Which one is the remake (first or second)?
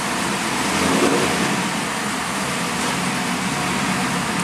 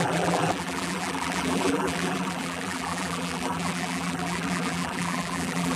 second